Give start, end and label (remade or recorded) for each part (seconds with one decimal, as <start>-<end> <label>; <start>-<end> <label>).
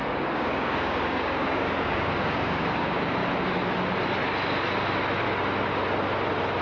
0.0-3.2 remade; 3.2-6.6 recorded